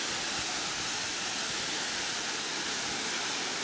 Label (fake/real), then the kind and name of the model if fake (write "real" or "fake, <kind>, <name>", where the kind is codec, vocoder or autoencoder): real